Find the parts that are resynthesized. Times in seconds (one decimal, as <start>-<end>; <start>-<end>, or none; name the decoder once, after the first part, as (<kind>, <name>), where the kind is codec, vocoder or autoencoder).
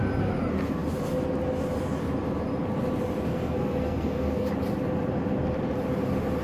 3.3-4.5 (codec, SNAC)